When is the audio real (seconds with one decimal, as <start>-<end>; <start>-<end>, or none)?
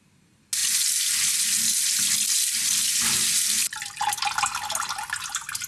0.0-5.7